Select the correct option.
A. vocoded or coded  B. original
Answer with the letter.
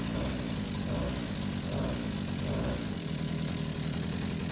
B